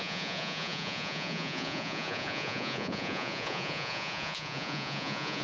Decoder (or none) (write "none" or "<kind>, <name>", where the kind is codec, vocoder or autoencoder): vocoder, Vocos